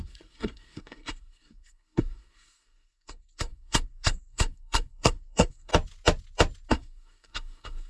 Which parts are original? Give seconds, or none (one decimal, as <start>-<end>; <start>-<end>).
5.7-6.7